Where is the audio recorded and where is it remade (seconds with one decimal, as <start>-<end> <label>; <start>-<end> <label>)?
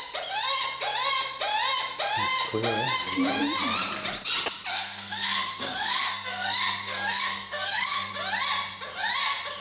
0.0-4.7 recorded; 4.7-8.1 remade; 8.1-9.6 recorded